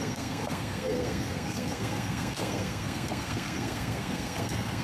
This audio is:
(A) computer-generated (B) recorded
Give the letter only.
A